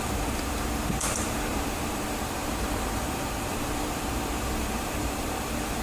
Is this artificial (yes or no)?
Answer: yes